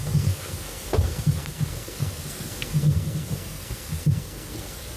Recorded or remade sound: remade